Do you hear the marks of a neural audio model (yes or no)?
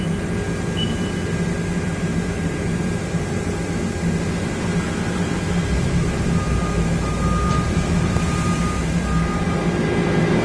no